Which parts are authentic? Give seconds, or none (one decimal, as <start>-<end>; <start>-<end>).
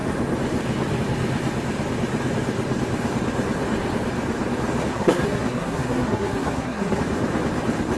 0.0-4.9; 7.0-8.0